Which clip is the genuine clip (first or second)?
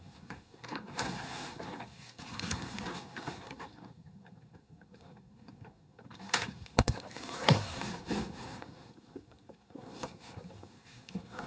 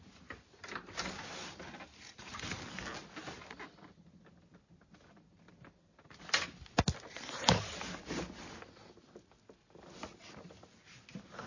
second